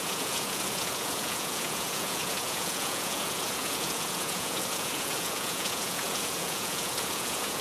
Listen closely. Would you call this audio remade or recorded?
remade